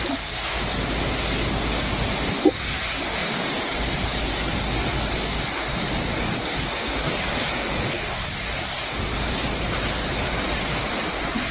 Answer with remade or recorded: recorded